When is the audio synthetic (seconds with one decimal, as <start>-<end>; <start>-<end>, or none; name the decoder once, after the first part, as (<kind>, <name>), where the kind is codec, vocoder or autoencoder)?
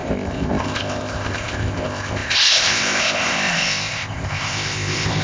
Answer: 0.0-5.2 (codec, ZipCodec)